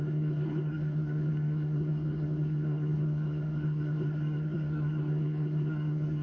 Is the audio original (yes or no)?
no